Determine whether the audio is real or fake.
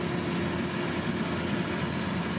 real